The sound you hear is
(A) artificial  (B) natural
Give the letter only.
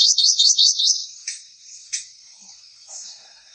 A